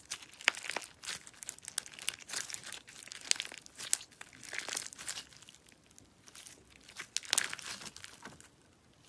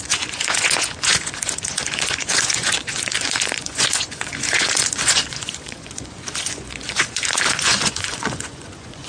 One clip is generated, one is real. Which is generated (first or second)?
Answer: second